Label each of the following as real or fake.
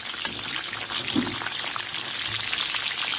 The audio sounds real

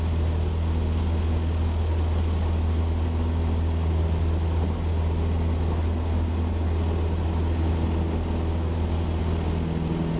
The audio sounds real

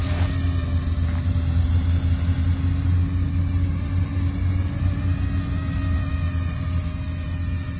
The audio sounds real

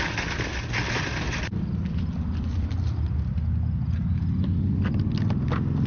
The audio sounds real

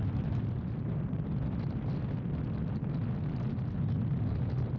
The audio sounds real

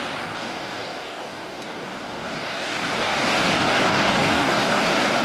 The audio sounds fake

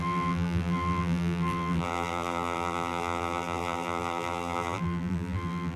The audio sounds fake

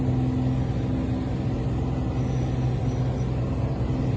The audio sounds real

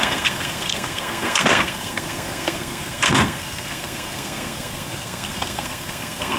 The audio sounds fake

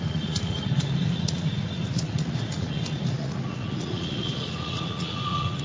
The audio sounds fake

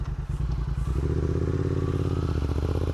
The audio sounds real